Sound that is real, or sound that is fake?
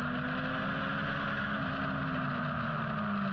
real